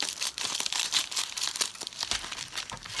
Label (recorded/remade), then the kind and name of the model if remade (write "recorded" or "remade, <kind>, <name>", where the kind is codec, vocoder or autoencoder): recorded